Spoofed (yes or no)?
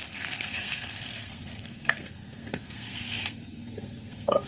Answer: yes